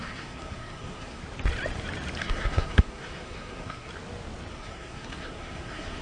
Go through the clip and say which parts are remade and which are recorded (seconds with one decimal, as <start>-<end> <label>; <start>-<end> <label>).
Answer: 0.0-1.2 remade; 1.2-2.2 recorded; 2.2-3.9 remade; 3.9-4.5 recorded; 4.5-6.0 remade